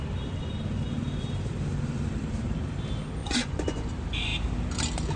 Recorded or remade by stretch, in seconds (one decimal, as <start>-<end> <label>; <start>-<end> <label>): 0.0-3.2 recorded; 3.2-3.9 remade; 3.9-5.2 recorded